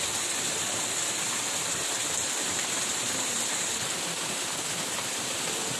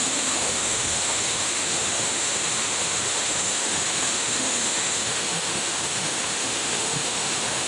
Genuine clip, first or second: first